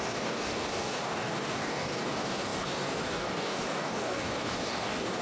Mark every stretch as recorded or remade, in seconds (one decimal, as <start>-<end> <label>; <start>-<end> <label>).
0.0-5.2 remade